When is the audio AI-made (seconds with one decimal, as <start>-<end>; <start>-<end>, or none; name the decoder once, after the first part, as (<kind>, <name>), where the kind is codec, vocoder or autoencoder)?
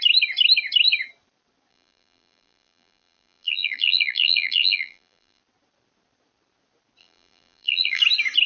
1.7-5.4 (vocoder, BigVGAN v2); 7.0-8.0